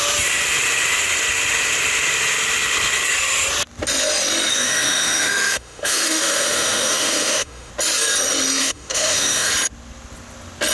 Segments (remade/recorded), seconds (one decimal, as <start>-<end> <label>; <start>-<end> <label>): 0.0-4.5 recorded; 4.5-7.7 remade; 7.7-8.6 recorded; 8.6-9.5 remade; 9.5-10.7 recorded